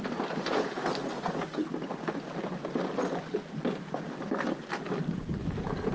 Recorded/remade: recorded